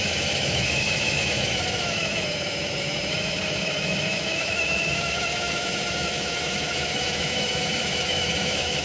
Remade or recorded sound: remade